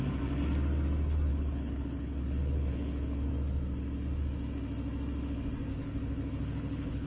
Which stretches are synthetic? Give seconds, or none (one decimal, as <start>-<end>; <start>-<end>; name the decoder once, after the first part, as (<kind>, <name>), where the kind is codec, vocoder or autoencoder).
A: 1.3-3.3 (codec, HILCodec); 5.7-7.1